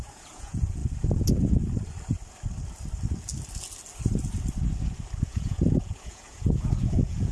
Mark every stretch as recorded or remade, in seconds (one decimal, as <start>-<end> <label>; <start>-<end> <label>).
0.0-0.8 remade; 0.8-5.2 recorded; 5.2-7.3 remade